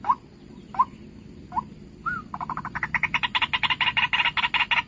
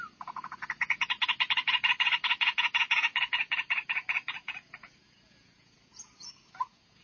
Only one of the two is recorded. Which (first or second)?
first